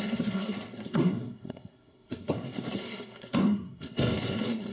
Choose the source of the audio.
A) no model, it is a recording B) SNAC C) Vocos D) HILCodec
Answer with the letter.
B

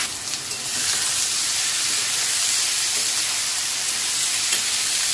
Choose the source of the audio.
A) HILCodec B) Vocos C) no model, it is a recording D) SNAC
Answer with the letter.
C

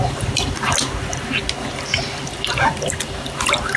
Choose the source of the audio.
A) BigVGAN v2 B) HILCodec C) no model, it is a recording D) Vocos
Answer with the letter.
C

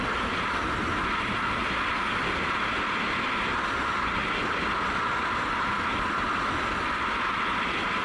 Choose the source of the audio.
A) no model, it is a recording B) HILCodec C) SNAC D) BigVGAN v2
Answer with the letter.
A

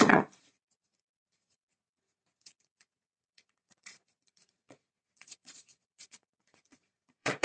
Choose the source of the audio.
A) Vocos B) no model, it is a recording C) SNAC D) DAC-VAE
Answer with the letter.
A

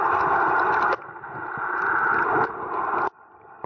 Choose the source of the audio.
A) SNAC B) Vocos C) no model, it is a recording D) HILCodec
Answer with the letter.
C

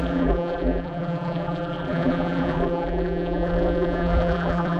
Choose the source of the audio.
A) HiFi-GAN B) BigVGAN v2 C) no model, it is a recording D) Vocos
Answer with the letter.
B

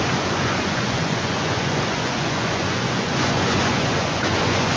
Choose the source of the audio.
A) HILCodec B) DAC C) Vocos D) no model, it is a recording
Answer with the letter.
C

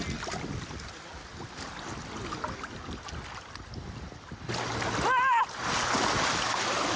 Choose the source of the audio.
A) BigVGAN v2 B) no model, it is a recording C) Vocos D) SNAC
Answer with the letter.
B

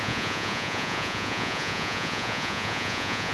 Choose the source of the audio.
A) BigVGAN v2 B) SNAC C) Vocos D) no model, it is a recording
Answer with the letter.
C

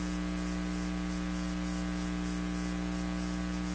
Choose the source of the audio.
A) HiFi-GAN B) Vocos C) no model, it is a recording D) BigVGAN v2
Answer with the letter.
C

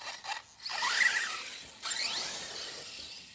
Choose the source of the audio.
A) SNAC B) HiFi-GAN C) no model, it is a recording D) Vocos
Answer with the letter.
C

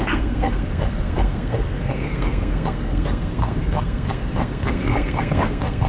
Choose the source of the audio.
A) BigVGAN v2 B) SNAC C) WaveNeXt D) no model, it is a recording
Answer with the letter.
B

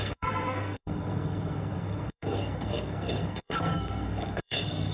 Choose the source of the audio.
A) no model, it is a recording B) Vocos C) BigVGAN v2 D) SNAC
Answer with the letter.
D